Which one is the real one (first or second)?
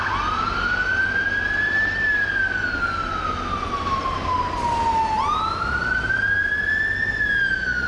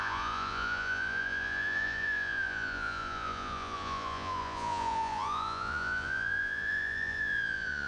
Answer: first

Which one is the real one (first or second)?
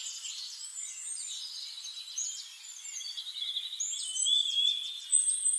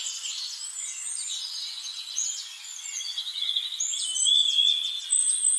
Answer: first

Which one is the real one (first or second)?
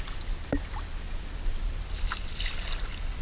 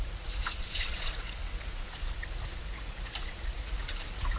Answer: first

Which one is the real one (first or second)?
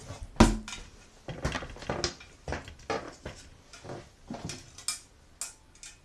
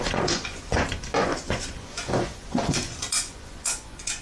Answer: first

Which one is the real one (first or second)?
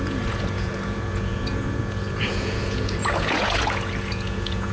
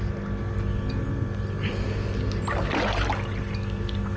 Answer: second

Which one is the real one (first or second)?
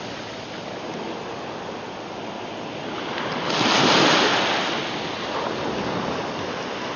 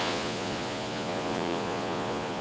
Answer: first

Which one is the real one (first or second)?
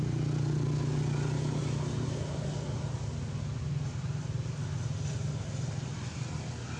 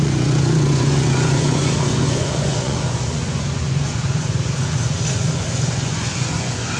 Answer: first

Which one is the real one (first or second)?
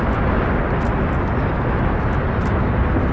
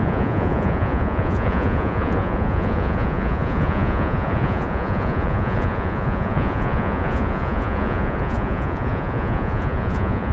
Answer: first